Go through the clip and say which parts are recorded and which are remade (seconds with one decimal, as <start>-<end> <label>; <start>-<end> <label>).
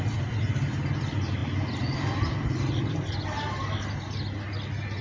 0.0-1.4 remade; 1.4-4.4 recorded; 4.4-5.0 remade